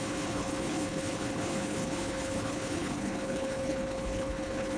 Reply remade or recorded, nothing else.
remade